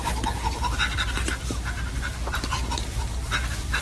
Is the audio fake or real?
real